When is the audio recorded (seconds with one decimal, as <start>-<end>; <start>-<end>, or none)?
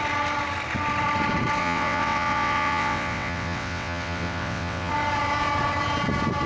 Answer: 0.0-1.6; 4.9-6.5